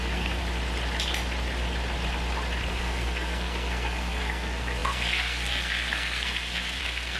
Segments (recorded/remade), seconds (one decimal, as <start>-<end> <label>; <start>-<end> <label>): 0.0-0.4 remade; 0.4-2.7 recorded; 2.7-7.2 remade